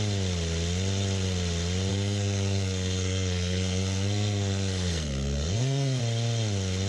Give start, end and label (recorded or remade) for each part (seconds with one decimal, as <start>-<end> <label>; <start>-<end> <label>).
0.0-1.9 recorded; 1.9-6.0 remade; 6.0-6.9 recorded